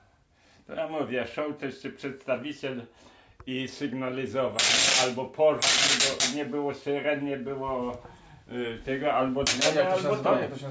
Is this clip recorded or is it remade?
recorded